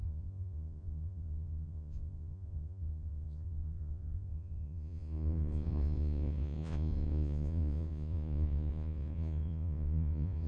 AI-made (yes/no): yes